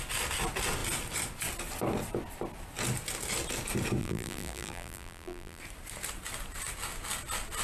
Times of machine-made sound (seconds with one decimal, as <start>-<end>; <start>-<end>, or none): 4.0-5.6